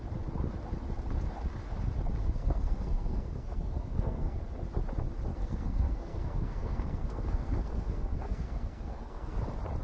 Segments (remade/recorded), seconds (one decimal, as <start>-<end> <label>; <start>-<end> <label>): 0.0-2.2 recorded; 2.2-4.4 remade; 4.4-5.3 recorded; 5.3-9.4 remade; 9.4-9.8 recorded